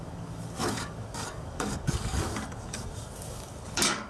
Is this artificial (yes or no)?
yes